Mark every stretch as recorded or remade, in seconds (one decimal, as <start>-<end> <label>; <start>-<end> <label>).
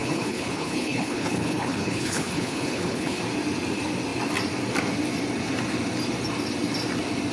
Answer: 0.0-3.2 remade; 3.2-7.3 recorded